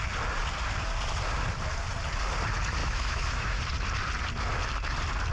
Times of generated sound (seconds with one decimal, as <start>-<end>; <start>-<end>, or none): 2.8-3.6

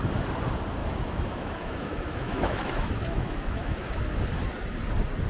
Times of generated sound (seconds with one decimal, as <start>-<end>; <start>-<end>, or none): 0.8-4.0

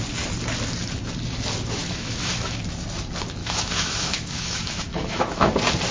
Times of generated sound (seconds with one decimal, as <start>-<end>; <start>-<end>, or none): 1.8-2.6; 3.4-5.5

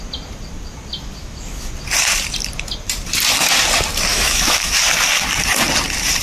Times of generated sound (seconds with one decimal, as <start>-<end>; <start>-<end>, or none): 1.2-1.7; 4.1-4.7

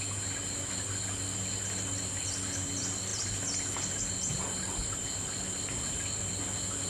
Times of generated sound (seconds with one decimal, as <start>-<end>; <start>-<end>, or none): none

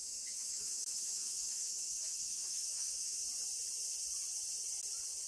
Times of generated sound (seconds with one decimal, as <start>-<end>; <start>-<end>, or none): 0.0-3.2

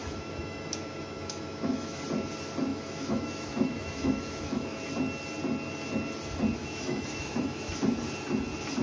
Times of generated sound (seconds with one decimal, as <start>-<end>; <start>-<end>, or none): 0.0-2.0; 2.7-4.8; 6.6-7.7